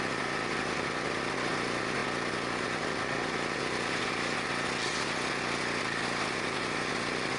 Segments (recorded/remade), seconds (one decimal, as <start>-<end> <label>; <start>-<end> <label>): 0.0-7.4 recorded